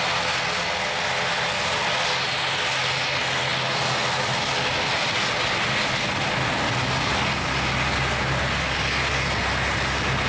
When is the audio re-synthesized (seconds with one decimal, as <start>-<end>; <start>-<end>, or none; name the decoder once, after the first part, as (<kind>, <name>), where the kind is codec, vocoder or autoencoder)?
none